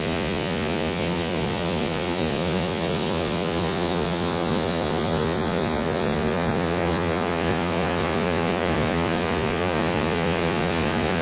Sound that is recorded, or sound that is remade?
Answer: remade